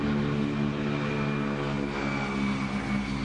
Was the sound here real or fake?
real